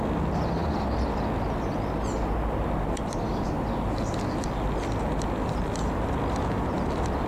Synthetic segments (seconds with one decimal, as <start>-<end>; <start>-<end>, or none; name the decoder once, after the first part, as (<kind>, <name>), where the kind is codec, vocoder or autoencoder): none

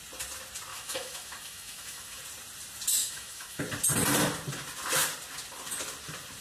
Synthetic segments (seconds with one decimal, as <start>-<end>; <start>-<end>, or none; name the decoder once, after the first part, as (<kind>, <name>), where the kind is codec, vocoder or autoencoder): 0.7-2.2 (autoencoder, DAC-VAE); 3.0-3.6

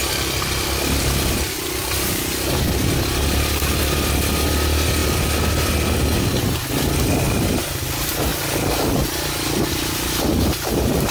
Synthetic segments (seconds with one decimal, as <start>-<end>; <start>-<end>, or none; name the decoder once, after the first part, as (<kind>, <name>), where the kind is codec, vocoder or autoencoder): none

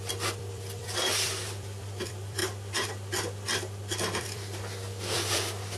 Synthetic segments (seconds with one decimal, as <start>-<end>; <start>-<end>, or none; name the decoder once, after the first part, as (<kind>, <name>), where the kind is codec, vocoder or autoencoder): 0.0-2.4 (vocoder, BigVGAN v2); 4.2-5.8

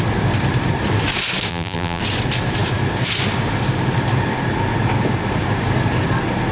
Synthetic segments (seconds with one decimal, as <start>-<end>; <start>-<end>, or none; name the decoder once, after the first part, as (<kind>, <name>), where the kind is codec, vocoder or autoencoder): 1.5-2.0 (vocoder, BigVGAN v2)

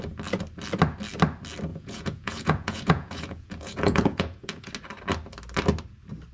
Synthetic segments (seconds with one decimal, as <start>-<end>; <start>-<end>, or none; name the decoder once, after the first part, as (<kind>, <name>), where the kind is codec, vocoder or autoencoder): 1.7-4.7 (vocoder, Vocos)